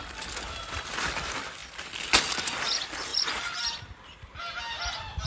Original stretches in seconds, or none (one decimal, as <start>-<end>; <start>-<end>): 0.0-5.3